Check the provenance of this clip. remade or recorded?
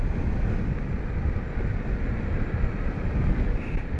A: recorded